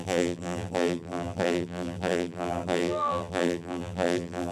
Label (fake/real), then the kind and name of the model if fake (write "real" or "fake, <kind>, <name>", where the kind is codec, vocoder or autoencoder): fake, vocoder, BigVGAN v2